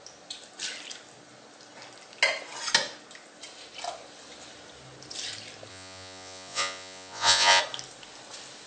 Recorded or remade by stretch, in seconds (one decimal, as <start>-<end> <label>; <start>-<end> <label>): 0.0-5.7 recorded; 5.7-7.6 remade; 7.6-8.7 recorded